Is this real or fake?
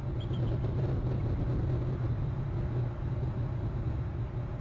real